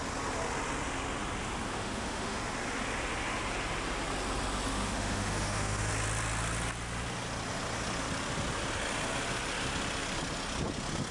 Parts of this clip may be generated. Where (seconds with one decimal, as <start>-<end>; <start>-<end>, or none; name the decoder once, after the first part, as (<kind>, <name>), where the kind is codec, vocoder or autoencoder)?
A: 1.7-2.4 (autoencoder, DAC-VAE); 4.7-5.9